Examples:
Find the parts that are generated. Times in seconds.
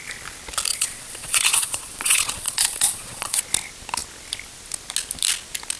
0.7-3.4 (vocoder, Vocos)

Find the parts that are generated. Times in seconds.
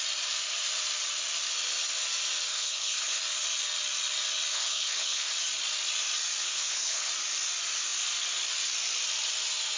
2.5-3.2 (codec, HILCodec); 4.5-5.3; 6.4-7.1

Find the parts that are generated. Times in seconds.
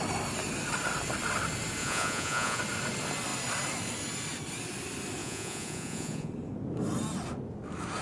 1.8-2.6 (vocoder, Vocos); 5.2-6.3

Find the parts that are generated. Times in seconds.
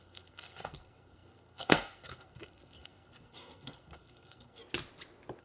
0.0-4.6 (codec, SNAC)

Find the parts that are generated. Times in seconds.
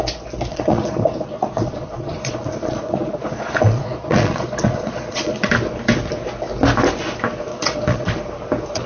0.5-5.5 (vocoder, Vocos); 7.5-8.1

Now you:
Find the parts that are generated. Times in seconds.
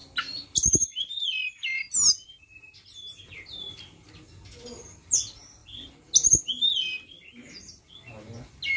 none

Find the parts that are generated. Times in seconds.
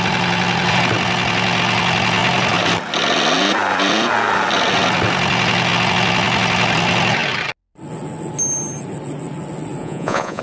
9.8-10.4 (vocoder, Vocos)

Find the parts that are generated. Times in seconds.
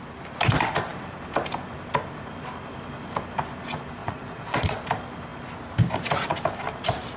4.0-4.8 (vocoder, Vocos)